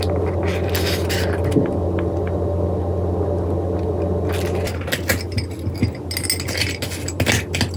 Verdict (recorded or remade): recorded